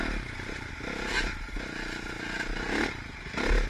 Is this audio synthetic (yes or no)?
no